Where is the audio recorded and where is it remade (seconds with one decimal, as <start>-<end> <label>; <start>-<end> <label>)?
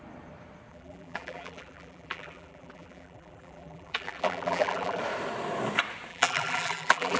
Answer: 0.0-0.7 recorded; 0.7-5.0 remade; 5.0-6.1 recorded; 6.1-7.2 remade